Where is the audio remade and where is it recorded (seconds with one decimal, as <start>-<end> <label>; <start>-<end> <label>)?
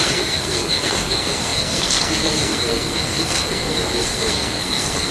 0.0-5.1 remade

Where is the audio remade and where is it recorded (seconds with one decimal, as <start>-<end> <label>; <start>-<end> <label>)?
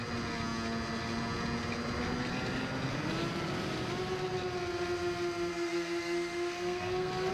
0.0-5.5 recorded; 5.5-7.3 remade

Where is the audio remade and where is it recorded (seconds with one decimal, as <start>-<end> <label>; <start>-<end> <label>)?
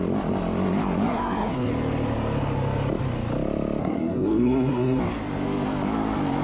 0.0-1.1 recorded; 1.1-1.7 remade; 1.7-3.8 recorded; 3.8-5.0 remade; 5.0-6.4 recorded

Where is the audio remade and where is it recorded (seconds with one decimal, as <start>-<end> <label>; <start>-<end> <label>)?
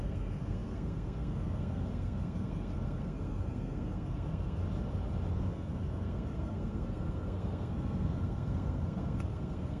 0.0-4.6 remade; 4.6-5.3 recorded; 5.3-9.8 remade